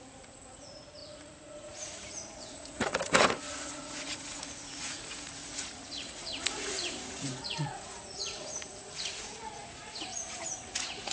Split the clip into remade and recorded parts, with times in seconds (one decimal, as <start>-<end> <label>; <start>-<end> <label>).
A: 0.0-11.1 remade